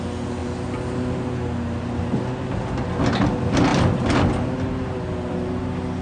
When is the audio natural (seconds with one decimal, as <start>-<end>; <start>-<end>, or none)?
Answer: 0.0-6.0